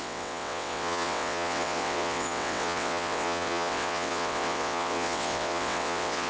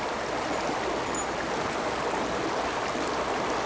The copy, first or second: first